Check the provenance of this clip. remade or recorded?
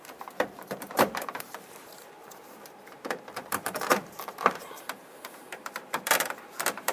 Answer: remade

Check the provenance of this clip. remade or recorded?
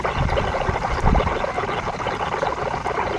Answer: recorded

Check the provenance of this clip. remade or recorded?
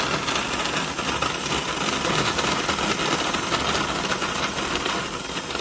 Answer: recorded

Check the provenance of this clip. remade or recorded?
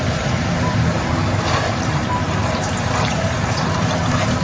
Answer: remade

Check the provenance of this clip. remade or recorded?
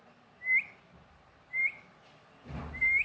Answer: recorded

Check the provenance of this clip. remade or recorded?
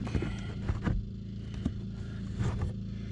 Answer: recorded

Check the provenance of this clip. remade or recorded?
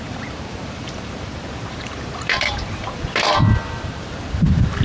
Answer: remade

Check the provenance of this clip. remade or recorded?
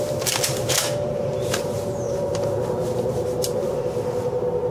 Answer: remade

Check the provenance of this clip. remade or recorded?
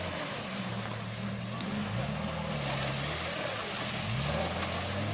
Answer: recorded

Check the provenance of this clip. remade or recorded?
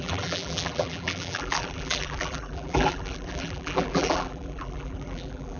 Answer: remade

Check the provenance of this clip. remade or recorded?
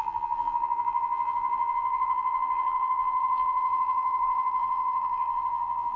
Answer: remade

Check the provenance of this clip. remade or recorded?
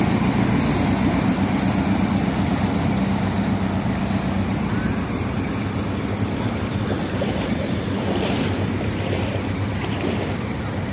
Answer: remade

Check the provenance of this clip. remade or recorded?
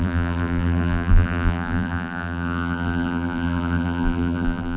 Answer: remade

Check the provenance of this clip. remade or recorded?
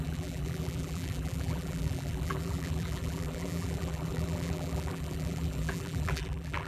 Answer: remade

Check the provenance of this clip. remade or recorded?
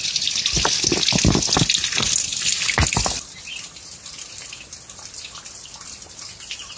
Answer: recorded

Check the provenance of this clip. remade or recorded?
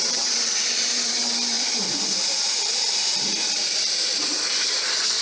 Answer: remade